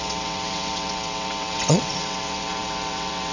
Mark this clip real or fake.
fake